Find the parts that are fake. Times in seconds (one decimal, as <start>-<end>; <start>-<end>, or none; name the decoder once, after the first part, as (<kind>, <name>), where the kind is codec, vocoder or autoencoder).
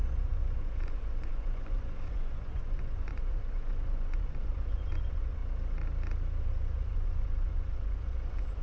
0.0-5.4 (vocoder, Vocos); 6.4-8.6